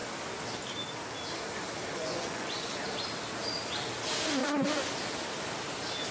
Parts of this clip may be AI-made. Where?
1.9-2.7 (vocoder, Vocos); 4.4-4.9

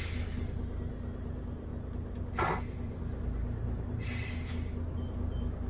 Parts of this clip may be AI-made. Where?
none

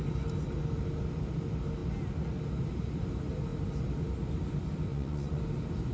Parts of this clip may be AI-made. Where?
4.9-5.4 (vocoder, Vocos)